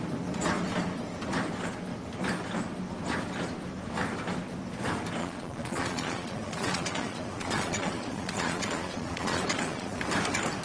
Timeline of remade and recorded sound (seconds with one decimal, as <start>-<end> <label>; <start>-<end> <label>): 0.0-5.2 recorded; 5.2-10.0 remade; 10.0-10.6 recorded